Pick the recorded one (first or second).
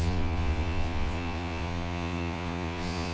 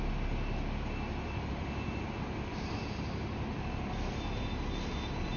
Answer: second